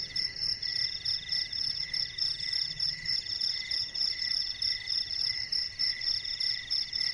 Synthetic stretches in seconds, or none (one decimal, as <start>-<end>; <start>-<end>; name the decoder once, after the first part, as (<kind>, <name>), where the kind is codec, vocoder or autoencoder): 3.3-5.5 (vocoder, BigVGAN v2)